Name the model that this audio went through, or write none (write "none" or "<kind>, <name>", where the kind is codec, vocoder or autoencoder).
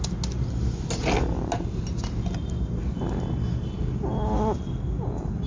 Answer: none